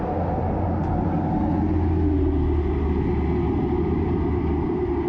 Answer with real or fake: real